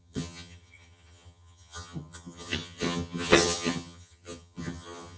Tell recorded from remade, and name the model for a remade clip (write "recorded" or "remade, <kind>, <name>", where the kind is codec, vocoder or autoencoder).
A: remade, vocoder, HiFi-GAN